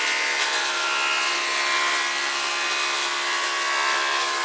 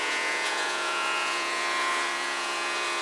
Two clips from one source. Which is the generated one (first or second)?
second